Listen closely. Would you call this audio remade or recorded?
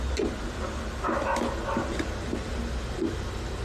recorded